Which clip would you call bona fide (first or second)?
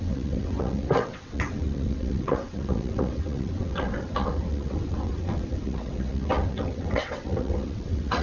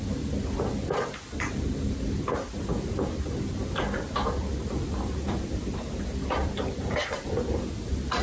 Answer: second